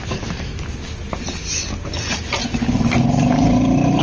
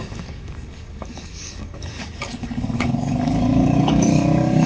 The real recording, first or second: first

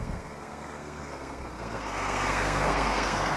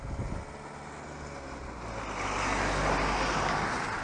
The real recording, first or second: second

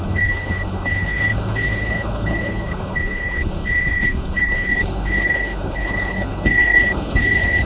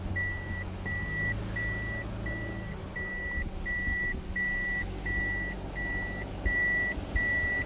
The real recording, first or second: second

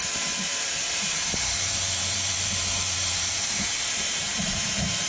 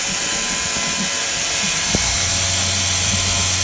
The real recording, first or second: second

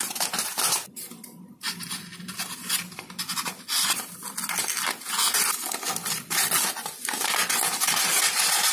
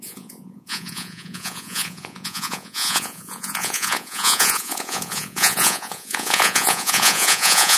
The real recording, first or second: first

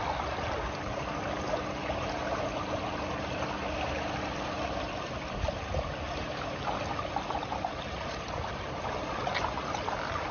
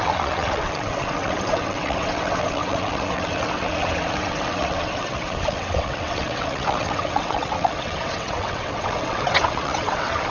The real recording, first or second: first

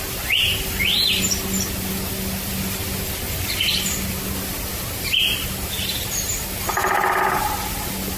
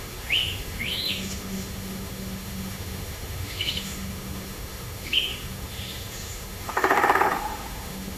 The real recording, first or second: first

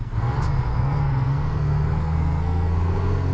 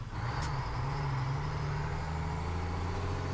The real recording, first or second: second